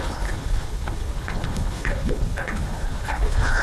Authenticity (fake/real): fake